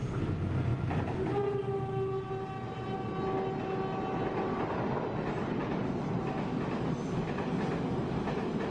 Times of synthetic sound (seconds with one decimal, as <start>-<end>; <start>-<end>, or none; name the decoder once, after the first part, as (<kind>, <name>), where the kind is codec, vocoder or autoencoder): none